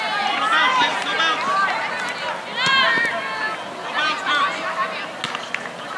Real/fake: real